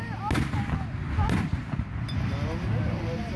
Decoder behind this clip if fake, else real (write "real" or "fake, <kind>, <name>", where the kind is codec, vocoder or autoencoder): real